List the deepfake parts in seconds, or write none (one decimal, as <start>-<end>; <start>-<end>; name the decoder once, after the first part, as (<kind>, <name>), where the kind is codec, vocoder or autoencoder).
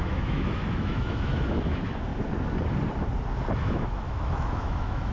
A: 0.0-2.1 (autoencoder, DAC-VAE); 3.6-5.1